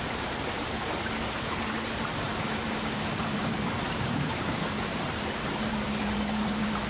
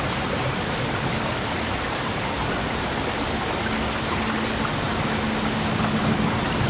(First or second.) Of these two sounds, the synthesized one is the first